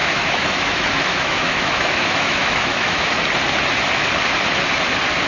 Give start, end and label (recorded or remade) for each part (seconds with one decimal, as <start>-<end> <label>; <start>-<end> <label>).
0.0-3.2 remade; 3.2-5.3 recorded

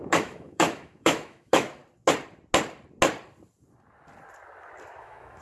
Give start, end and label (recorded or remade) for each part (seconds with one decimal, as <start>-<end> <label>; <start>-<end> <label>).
0.0-1.8 remade; 1.8-5.0 recorded; 5.0-5.4 remade

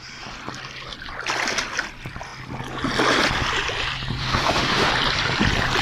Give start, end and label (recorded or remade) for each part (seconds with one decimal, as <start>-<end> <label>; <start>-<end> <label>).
0.0-4.2 recorded; 4.2-4.9 remade; 4.9-5.8 recorded